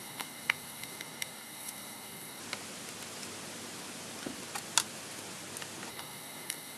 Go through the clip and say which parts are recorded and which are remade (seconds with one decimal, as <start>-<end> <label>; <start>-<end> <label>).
0.0-2.4 remade; 2.4-5.9 recorded; 5.9-6.8 remade